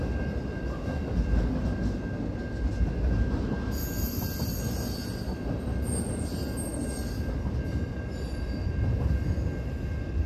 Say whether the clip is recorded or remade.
recorded